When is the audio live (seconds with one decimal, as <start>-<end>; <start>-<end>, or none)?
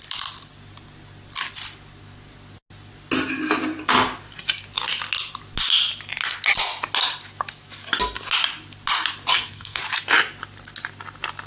0.0-9.3; 9.8-11.5